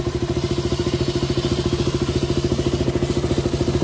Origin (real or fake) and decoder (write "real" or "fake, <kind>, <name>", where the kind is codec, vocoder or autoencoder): real